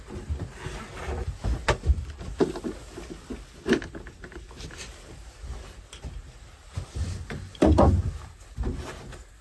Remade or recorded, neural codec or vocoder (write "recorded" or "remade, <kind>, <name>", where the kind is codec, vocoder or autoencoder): recorded